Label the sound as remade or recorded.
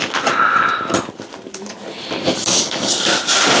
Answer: recorded